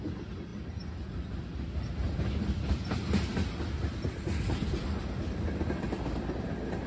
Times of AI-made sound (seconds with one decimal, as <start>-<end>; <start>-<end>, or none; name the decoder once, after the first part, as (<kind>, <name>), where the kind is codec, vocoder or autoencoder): none